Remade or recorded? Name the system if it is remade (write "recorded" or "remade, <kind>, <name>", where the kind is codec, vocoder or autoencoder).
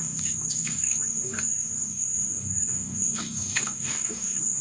remade, codec, DAC